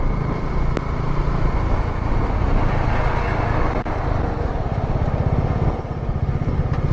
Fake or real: real